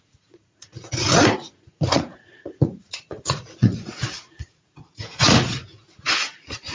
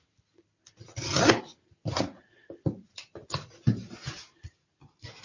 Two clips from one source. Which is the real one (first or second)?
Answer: second